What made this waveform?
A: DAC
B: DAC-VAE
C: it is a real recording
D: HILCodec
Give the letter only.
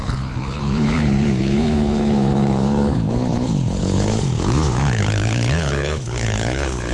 D